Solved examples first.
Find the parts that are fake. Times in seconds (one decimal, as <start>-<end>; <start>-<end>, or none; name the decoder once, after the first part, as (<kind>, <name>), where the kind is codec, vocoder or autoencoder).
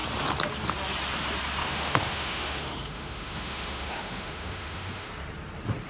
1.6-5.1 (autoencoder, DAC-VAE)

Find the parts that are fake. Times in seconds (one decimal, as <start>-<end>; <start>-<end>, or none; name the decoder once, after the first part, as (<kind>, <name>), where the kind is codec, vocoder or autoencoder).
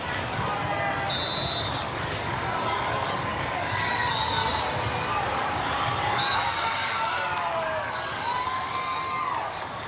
0.0-0.5 (codec, DAC); 1.6-4.4; 5.1-9.9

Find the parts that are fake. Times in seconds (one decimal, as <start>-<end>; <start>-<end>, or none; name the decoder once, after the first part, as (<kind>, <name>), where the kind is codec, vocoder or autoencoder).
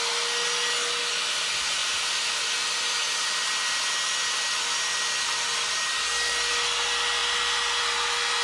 none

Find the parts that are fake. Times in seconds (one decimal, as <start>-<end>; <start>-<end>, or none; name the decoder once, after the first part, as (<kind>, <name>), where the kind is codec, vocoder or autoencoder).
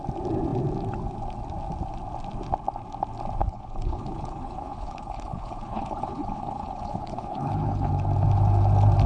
3.4-7.9 (codec, HILCodec)